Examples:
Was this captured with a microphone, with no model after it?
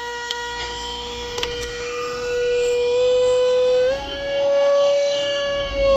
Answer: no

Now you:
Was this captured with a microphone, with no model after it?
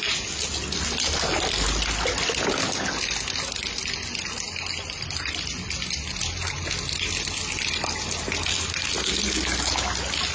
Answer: yes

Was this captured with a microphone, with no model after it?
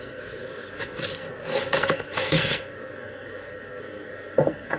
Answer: no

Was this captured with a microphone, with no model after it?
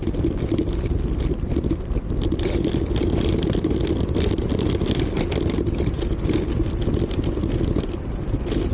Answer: yes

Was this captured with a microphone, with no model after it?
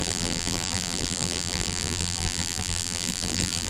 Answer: no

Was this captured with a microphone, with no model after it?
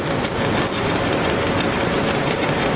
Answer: yes